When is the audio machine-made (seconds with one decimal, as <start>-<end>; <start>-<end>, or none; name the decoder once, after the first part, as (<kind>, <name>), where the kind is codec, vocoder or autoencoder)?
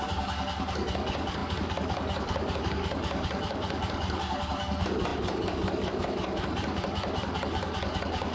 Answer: 0.0-8.3 (codec, DAC)